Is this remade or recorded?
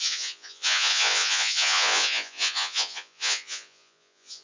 remade